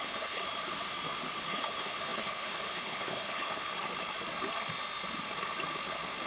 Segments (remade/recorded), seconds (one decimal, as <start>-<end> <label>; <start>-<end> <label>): 0.0-0.4 remade; 0.4-1.4 recorded; 1.4-3.7 remade; 3.7-6.3 recorded